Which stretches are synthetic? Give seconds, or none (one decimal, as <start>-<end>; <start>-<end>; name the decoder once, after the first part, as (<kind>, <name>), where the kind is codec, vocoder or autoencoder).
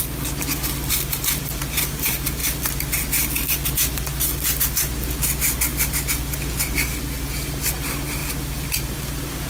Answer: none